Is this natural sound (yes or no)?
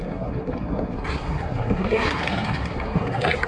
no